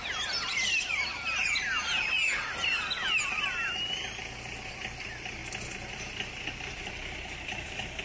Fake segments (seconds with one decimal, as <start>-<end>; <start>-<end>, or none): 0.5-1.1; 4.7-5.4; 5.9-8.0